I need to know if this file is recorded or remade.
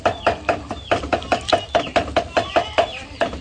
remade